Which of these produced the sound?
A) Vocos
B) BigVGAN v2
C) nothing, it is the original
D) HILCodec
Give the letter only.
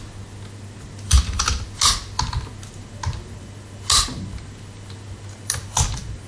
C